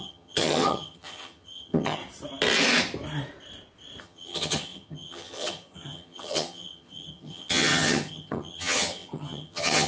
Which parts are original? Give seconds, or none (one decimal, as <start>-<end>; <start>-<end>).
2.0-4.0